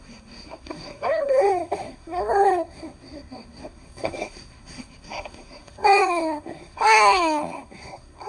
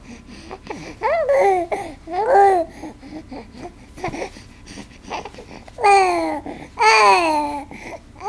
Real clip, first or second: second